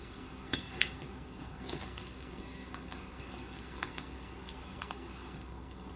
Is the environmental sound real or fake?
fake